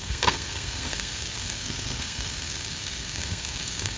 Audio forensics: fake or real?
fake